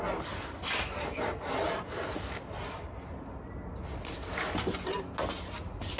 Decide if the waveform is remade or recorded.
recorded